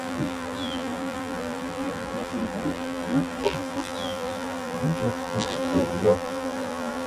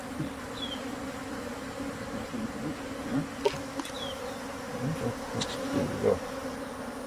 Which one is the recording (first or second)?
second